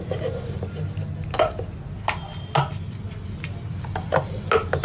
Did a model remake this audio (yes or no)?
no